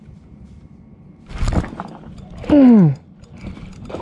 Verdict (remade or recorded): recorded